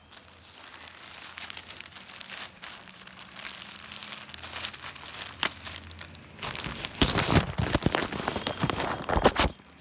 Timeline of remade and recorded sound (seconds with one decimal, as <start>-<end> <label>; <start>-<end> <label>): 0.0-9.8 recorded